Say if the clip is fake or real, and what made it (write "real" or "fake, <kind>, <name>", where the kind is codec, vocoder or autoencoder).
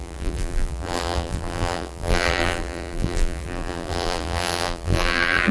fake, vocoder, BigVGAN v2